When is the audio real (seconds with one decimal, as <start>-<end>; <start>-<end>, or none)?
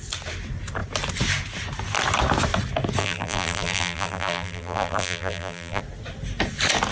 0.0-3.0; 5.8-6.9